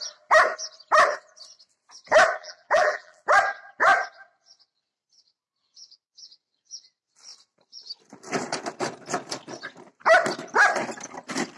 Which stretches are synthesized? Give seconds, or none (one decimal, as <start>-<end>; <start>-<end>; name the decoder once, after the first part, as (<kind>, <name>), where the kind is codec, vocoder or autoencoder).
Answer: 2.4-3.2 (vocoder, BigVGAN v2)